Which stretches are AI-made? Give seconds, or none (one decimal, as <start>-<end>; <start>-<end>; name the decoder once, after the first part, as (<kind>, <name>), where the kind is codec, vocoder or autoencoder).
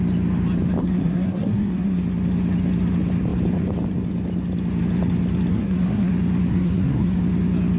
0.8-2.0 (codec, SNAC); 5.5-6.1; 6.5-7.2